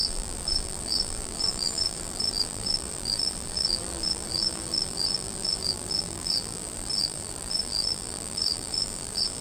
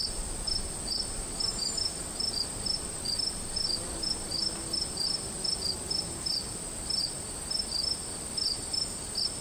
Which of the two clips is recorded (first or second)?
second